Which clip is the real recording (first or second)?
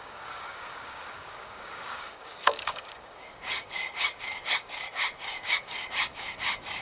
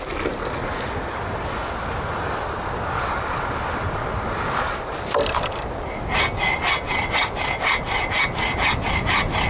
second